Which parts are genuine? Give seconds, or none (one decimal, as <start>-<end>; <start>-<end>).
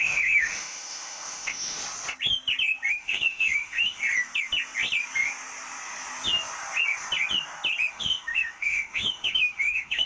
1.8-2.9; 4.0-7.9